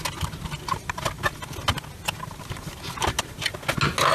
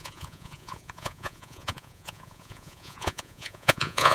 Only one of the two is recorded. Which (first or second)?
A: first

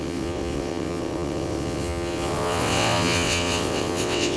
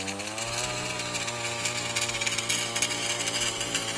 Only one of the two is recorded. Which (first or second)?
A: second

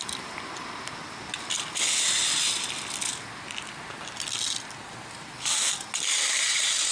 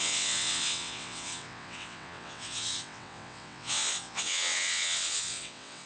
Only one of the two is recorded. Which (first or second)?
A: first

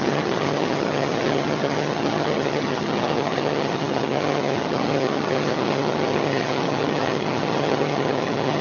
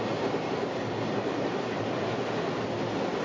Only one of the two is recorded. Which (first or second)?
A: second